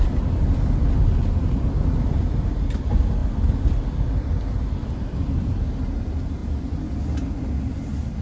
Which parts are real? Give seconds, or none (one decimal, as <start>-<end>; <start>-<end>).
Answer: 0.0-8.2